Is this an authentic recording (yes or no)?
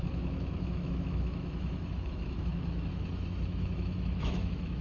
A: no